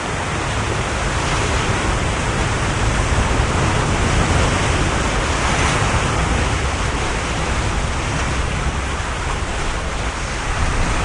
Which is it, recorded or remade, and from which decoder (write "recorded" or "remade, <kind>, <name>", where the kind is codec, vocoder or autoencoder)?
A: recorded